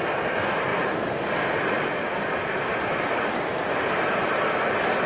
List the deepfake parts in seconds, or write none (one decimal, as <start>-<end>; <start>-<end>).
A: 0.7-1.3; 2.7-4.4